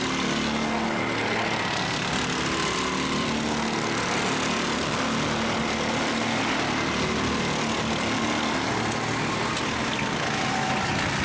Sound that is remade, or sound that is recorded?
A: recorded